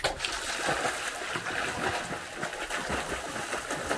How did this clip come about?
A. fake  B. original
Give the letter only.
B